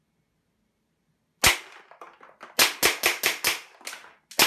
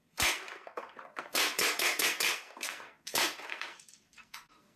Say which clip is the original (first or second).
first